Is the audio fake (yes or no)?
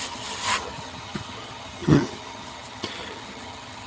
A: yes